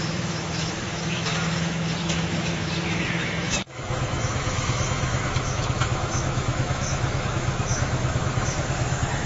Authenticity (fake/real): fake